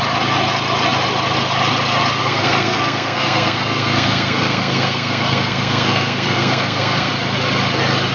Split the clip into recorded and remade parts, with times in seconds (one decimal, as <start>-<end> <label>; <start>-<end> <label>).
0.0-2.2 recorded; 2.2-7.1 remade; 7.1-8.1 recorded